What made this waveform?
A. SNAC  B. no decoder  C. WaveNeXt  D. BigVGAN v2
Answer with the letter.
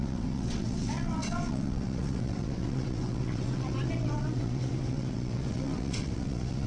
C